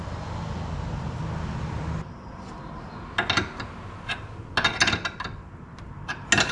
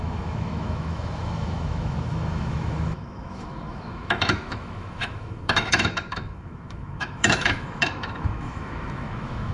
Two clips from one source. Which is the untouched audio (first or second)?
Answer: first